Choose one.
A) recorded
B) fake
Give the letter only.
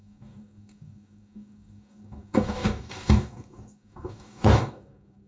B